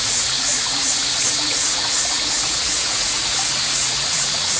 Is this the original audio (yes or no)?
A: no